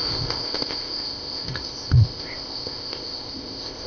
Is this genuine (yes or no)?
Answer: no